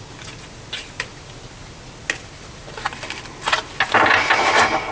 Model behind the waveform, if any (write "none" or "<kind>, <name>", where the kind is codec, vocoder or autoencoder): none